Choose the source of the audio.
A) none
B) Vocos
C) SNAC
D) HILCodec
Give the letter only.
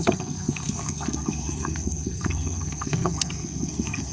C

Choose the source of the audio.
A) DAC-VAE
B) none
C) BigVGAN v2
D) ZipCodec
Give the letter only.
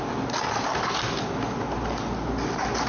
B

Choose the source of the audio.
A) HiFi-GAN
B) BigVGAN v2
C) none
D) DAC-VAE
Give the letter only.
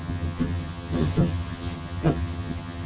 A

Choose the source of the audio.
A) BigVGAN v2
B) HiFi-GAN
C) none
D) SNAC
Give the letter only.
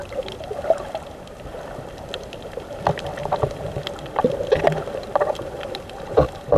C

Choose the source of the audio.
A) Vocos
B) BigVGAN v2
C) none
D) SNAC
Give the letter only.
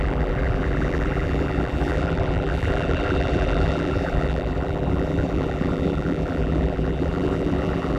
B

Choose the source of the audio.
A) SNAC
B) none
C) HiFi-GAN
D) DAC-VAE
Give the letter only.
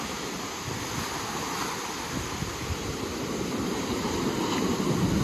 B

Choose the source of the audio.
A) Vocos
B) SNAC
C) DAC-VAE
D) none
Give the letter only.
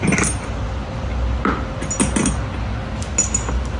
D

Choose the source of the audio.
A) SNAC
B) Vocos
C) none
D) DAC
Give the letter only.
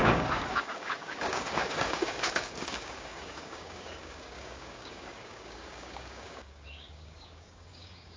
D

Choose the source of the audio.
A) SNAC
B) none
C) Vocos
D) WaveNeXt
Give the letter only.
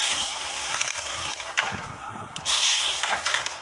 A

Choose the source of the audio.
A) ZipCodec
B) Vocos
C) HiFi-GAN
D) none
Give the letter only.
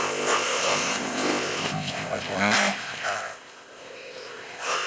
A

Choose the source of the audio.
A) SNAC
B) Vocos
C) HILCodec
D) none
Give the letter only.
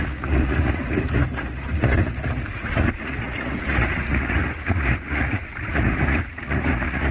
B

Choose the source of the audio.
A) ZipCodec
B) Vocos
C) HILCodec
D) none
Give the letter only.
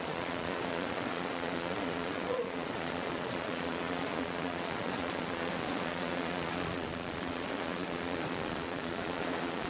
B